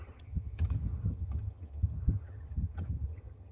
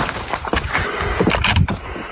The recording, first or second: second